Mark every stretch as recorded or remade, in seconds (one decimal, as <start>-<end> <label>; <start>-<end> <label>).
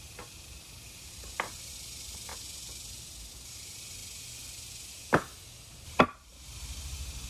0.0-2.3 remade; 2.3-3.3 recorded; 3.3-4.0 remade; 4.0-5.7 recorded; 5.7-6.3 remade; 6.3-7.3 recorded